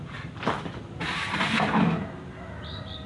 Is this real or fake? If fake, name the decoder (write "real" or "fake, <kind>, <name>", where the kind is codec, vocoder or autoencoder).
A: real